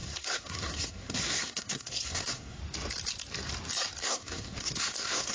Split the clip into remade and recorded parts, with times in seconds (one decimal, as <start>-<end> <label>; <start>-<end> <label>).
0.0-2.6 remade; 2.6-4.0 recorded; 4.0-5.3 remade